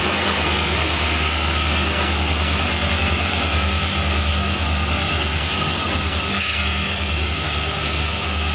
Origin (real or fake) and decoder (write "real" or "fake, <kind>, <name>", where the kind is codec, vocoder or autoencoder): fake, codec, SNAC